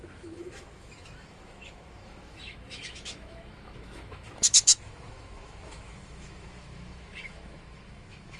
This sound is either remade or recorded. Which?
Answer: remade